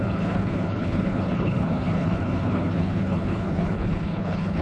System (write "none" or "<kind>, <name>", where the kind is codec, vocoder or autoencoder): codec, HILCodec